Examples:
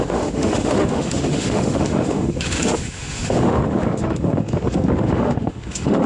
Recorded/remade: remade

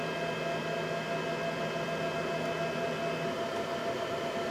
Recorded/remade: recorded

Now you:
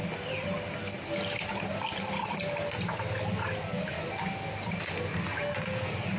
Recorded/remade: recorded